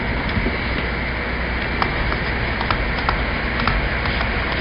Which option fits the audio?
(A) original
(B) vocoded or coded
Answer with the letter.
A